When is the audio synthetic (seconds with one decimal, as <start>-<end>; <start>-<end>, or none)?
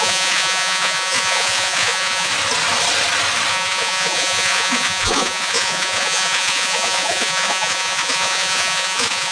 0.0-2.3; 3.5-9.3